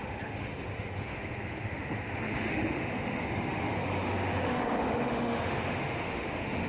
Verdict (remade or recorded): remade